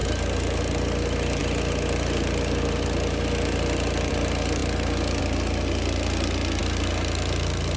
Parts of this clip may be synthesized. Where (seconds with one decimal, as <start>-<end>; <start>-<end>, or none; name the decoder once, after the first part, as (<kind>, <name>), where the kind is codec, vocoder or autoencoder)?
0.0-0.7 (vocoder, BigVGAN v2)